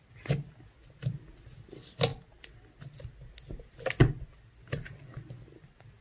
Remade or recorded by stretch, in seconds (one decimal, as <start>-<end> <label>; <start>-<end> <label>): 0.0-6.0 recorded